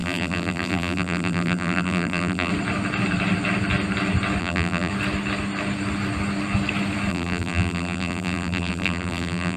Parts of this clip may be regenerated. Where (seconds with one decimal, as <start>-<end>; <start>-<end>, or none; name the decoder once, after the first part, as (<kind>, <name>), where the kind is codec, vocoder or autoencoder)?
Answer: 0.0-2.5 (vocoder, BigVGAN v2); 4.4-4.9; 7.1-9.6